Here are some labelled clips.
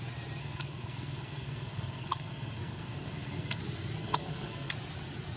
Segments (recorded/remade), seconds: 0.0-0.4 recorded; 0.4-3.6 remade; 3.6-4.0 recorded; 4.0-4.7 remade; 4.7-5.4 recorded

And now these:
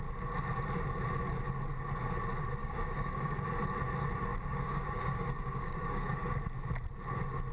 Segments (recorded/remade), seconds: 0.0-2.6 recorded; 2.6-3.4 remade; 3.4-4.3 recorded; 4.3-6.3 remade; 6.3-7.5 recorded

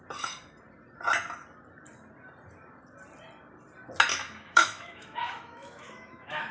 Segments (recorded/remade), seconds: 0.0-4.1 recorded; 4.1-6.5 remade

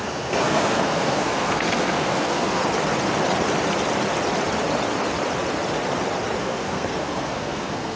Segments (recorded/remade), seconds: 0.0-2.6 remade; 2.6-6.4 recorded; 6.4-8.0 remade

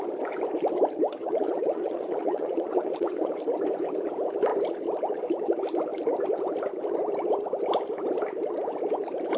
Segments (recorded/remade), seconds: 0.0-1.2 recorded; 1.2-3.4 remade; 3.4-9.4 recorded

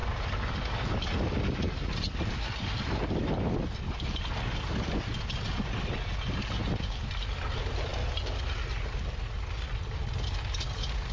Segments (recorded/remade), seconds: 0.0-11.1 recorded

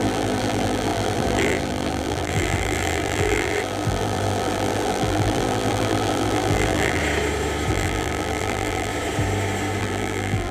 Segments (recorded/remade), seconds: 0.0-7.0 remade; 7.0-7.7 recorded; 7.7-8.9 remade; 8.9-9.8 recorded; 9.8-10.5 remade